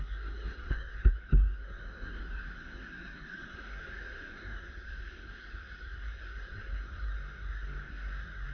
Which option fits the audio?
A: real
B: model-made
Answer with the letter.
B